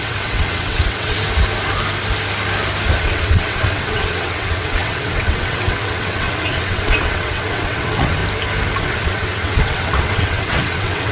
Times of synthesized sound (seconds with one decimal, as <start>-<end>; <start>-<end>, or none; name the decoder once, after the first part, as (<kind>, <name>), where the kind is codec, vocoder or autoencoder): 0.0-1.2 (vocoder, WaveNeXt); 3.0-8.2; 8.8-11.1